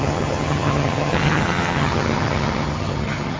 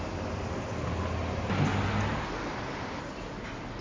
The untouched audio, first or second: second